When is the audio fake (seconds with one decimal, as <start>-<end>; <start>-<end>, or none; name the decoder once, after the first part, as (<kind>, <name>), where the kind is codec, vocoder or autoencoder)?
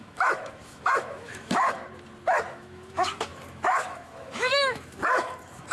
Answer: 0.0-1.8 (autoencoder, DAC-VAE); 2.5-5.7